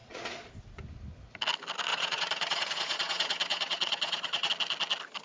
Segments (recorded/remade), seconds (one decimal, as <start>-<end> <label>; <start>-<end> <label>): 0.0-0.5 remade; 0.5-1.9 recorded; 1.9-4.5 remade; 4.5-5.2 recorded